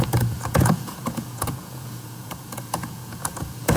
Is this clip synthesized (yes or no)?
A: yes